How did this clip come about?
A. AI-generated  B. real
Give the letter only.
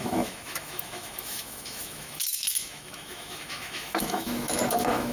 A